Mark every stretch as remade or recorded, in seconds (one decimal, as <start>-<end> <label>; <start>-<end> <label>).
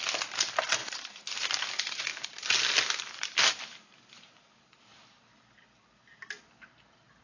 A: 0.0-7.2 recorded